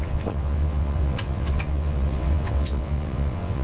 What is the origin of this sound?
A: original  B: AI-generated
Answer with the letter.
B